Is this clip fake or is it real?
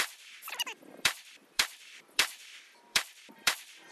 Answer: fake